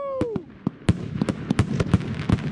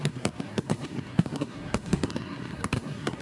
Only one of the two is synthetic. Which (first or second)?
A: second